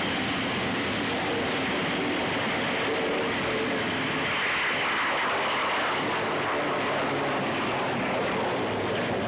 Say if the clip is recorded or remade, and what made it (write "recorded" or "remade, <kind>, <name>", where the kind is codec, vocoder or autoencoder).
recorded